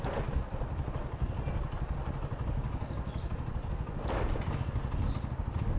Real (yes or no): yes